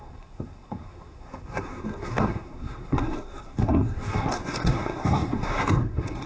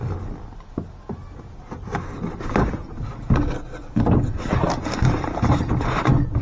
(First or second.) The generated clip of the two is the first